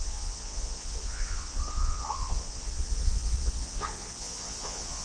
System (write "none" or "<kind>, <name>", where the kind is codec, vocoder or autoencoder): vocoder, Vocos